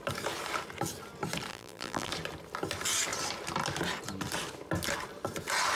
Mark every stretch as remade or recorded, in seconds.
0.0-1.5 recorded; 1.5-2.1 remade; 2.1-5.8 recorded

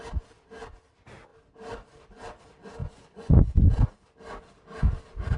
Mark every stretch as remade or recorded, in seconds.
0.0-2.8 recorded; 2.8-3.7 remade; 3.7-5.4 recorded

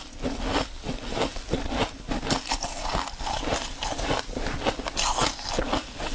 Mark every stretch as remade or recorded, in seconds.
0.0-6.1 recorded

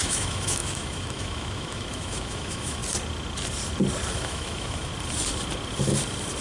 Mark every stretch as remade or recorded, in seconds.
0.0-2.8 remade; 2.8-4.1 recorded; 4.1-4.9 remade; 4.9-6.4 recorded

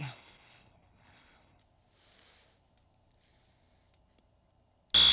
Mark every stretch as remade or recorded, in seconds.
0.0-1.6 remade; 1.6-5.1 recorded

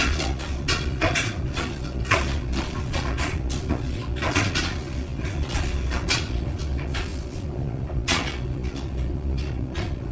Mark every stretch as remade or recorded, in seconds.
0.0-10.1 remade

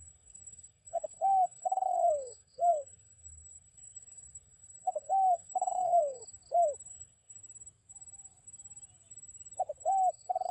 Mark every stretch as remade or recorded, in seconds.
0.0-6.2 remade; 6.2-6.9 recorded; 6.9-7.4 remade; 7.4-10.1 recorded; 10.1-10.5 remade

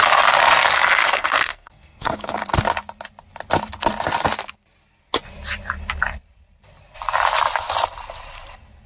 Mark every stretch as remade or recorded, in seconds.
0.0-1.0 recorded; 1.0-2.3 remade; 2.3-8.9 recorded